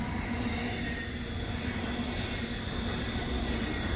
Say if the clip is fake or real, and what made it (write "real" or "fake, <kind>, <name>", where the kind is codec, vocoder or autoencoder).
real